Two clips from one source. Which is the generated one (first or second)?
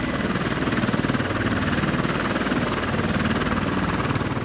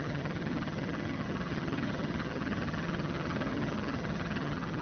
second